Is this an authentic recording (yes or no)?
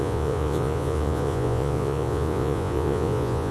no